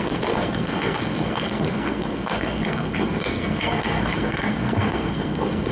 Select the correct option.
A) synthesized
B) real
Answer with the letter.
A